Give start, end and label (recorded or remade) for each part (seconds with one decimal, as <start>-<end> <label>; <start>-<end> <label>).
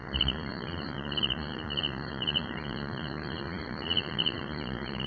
0.0-5.1 remade